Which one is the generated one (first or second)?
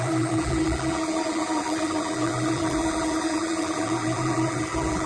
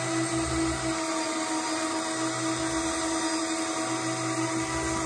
first